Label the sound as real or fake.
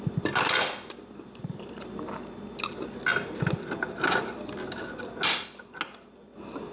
real